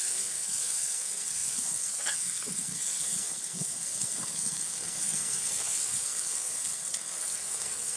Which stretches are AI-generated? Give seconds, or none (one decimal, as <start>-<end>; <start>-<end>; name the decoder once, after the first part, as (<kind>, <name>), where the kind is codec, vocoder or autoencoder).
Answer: 0.0-8.0 (codec, SNAC)